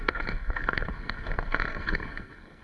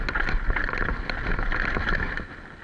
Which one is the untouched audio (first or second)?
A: second